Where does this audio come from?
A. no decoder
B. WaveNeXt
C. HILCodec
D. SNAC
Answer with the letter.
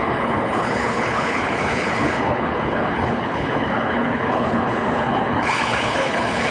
C